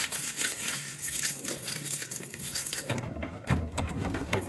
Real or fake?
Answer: fake